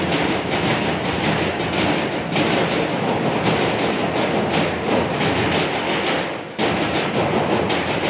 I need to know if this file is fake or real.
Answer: real